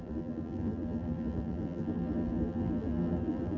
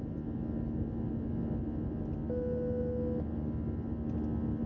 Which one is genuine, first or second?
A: second